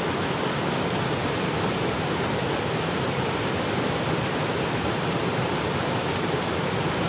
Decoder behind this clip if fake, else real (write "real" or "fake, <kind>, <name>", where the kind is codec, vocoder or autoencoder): real